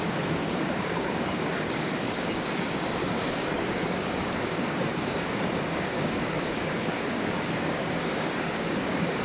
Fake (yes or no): yes